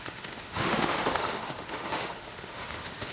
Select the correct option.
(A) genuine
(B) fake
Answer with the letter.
B